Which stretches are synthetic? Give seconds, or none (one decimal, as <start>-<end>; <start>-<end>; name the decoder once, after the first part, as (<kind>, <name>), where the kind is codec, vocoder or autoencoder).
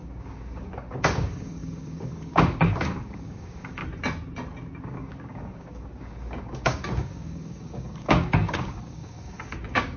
0.0-3.8 (codec, DAC); 4.8-10.0